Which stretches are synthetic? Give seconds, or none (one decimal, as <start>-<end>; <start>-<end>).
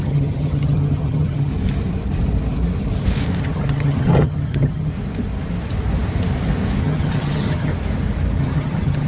0.0-1.5; 3.4-4.9; 6.8-7.7; 8.4-9.1